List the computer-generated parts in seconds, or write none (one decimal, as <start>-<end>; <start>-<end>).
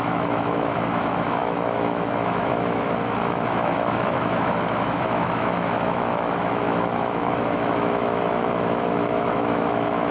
0.0-10.1